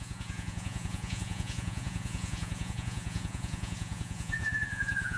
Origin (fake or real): fake